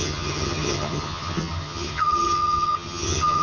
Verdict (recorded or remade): remade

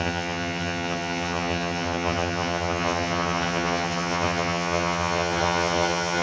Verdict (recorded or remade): remade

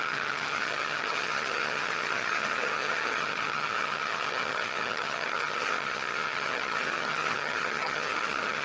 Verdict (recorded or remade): remade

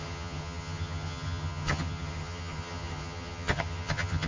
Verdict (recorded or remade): remade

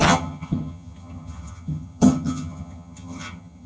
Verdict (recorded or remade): remade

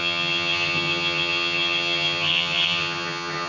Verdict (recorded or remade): remade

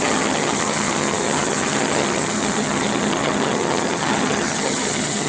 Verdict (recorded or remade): remade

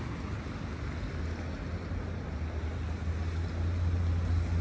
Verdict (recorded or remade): recorded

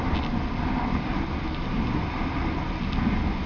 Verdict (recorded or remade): recorded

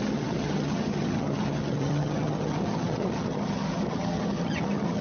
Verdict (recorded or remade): remade